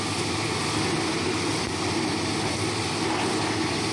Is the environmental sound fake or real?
real